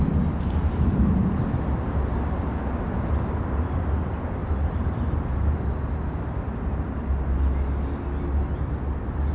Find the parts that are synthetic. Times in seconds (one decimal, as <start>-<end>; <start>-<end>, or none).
none